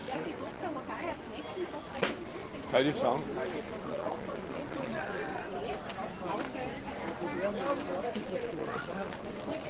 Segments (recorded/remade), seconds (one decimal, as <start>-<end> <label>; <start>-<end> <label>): 0.0-1.3 remade; 1.3-1.9 recorded; 1.9-2.4 remade; 2.4-3.6 recorded; 3.6-5.5 remade; 5.5-8.0 recorded; 8.0-9.7 remade